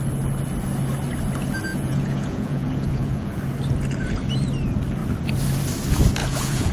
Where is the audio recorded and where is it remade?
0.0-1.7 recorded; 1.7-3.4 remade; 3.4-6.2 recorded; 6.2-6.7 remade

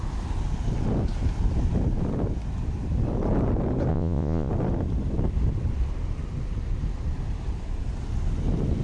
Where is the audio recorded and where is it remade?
0.0-3.9 recorded; 3.9-4.5 remade; 4.5-8.8 recorded

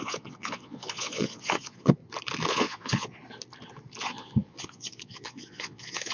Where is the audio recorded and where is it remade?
0.0-2.0 remade; 2.0-2.5 recorded; 2.5-3.2 remade; 3.2-4.0 recorded; 4.0-6.1 remade

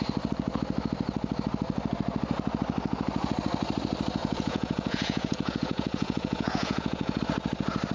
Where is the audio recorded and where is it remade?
0.0-4.2 recorded; 4.2-7.2 remade; 7.2-7.9 recorded

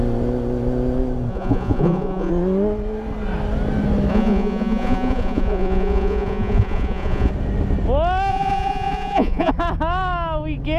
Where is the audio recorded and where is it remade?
0.0-1.3 recorded; 1.3-2.3 remade; 2.3-4.1 recorded; 4.1-7.3 remade; 7.3-8.3 recorded; 8.3-9.5 remade; 9.5-10.8 recorded

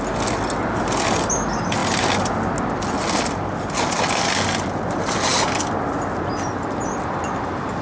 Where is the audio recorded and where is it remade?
0.0-7.8 recorded

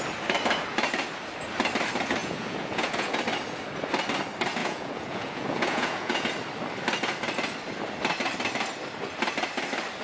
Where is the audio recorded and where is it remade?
0.0-2.2 recorded; 2.2-3.2 remade; 3.2-4.6 recorded; 4.6-6.3 remade; 6.3-10.0 recorded

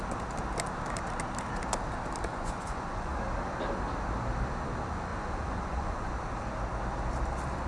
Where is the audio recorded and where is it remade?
0.0-2.3 recorded; 2.3-3.1 remade; 3.1-5.1 recorded; 5.1-6.1 remade; 6.1-7.7 recorded